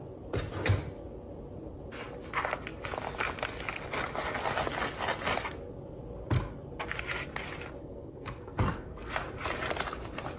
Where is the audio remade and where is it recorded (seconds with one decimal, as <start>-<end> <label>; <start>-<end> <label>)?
0.0-7.8 recorded; 7.8-9.1 remade; 9.1-10.4 recorded